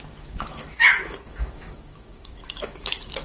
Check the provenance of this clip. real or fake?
fake